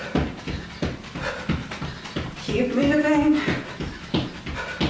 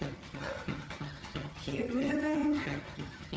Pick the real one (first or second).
first